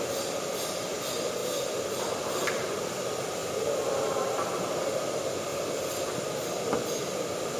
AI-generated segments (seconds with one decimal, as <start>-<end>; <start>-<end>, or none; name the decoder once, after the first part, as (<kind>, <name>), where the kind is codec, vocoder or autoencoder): 1.4-2.0 (vocoder, BigVGAN v2); 3.4-5.1; 5.5-6.2